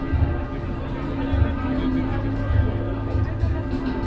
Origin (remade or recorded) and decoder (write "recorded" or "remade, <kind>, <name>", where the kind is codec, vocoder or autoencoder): recorded